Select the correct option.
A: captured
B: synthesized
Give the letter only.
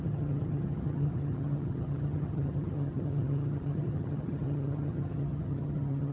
B